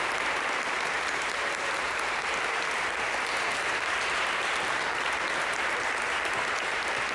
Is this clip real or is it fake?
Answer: fake